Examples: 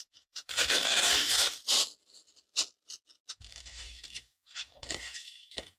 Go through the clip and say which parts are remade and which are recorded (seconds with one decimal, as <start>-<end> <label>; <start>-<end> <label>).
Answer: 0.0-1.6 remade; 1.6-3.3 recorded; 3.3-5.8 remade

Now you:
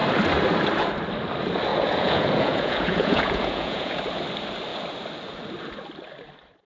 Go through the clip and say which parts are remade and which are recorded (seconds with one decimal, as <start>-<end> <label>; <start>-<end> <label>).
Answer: 0.0-1.7 recorded; 1.7-4.0 remade; 4.0-6.8 recorded

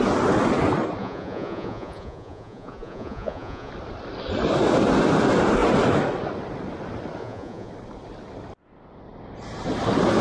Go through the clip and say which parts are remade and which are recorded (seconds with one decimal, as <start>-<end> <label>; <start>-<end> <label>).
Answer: 0.0-1.0 recorded; 1.0-3.7 remade; 3.7-7.2 recorded; 7.2-7.7 remade; 7.7-10.2 recorded